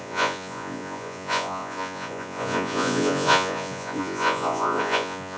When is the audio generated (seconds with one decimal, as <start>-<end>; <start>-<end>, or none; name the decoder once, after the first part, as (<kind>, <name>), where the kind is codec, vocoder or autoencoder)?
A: 0.0-5.4 (vocoder, Vocos)

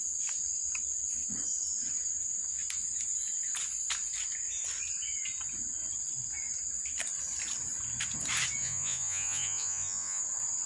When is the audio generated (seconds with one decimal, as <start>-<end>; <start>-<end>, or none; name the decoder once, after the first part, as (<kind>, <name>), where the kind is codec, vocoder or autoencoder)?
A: 8.6-10.2 (vocoder, Vocos)